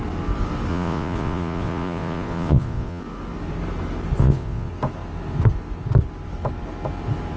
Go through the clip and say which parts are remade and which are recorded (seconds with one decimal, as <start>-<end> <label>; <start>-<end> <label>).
0.0-0.7 recorded; 0.7-3.0 remade; 3.0-4.2 recorded; 4.2-4.7 remade; 4.7-7.4 recorded

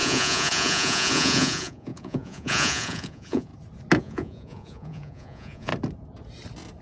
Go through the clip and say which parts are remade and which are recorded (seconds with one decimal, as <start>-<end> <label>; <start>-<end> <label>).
0.0-3.5 remade; 3.5-4.0 recorded; 4.0-5.7 remade; 5.7-6.8 recorded